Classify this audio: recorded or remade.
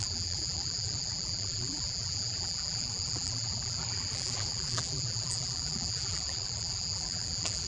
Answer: remade